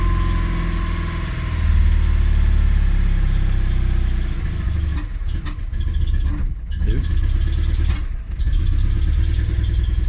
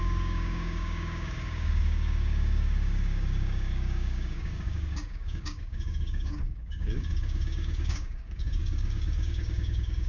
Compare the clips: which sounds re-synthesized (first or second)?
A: second